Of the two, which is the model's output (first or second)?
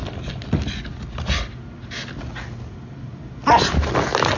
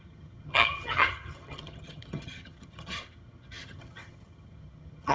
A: second